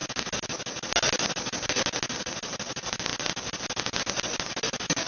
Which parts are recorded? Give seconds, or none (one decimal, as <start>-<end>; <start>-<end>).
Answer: 0.0-5.1